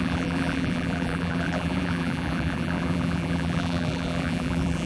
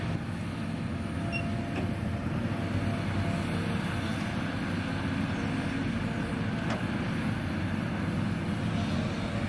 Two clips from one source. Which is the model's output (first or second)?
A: first